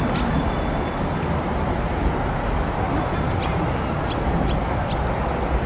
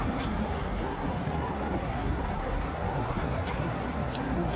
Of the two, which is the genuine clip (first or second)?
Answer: first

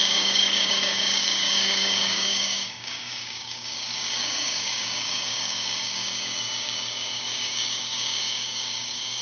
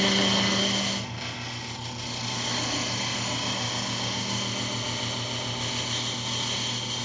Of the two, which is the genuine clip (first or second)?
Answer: second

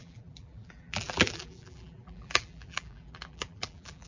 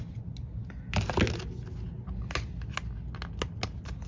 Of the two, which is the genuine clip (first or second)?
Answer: second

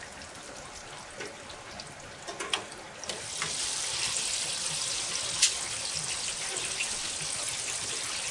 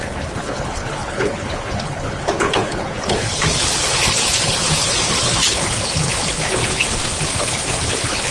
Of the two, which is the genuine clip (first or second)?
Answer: first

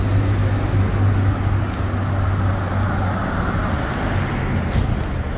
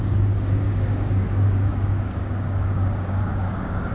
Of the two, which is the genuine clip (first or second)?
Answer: first